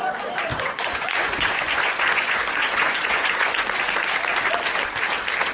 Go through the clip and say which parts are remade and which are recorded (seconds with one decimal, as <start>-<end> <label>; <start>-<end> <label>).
0.0-0.5 recorded; 0.5-3.8 remade; 3.8-5.5 recorded